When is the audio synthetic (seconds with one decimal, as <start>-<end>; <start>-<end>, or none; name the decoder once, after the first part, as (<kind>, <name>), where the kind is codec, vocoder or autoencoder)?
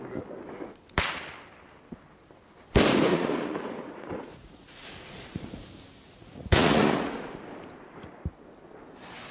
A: 3.1-5.7 (vocoder, Vocos); 6.2-7.3